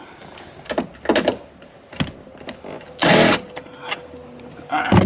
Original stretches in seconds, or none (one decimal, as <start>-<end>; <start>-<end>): 0.0-5.1